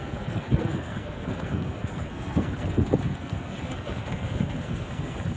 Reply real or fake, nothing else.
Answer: fake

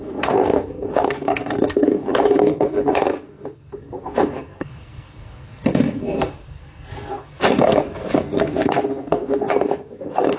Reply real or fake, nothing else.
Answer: fake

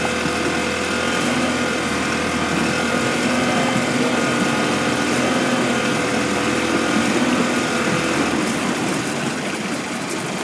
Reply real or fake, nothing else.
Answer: real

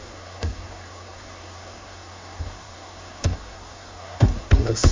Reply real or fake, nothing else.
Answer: fake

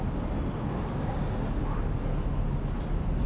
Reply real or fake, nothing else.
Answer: real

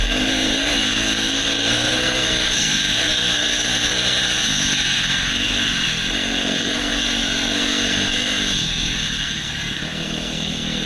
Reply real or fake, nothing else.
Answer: fake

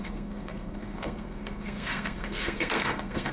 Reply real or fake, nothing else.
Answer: fake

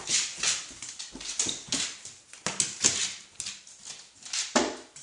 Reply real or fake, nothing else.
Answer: real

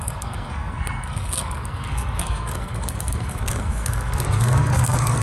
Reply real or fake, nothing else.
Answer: fake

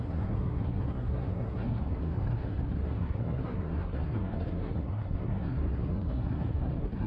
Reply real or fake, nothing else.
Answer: fake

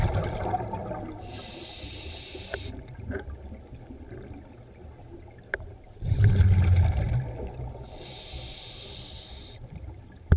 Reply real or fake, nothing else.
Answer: real